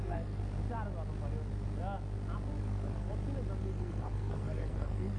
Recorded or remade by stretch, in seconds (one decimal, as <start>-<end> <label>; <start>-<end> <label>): 0.0-0.4 remade; 0.4-2.6 recorded; 2.6-3.1 remade; 3.1-3.6 recorded; 3.6-5.2 remade